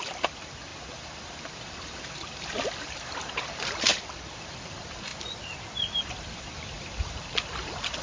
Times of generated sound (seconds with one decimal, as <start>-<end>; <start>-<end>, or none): 0.0-5.1; 6.0-8.0